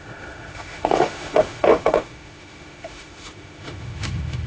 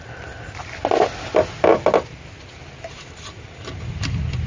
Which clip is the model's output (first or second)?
first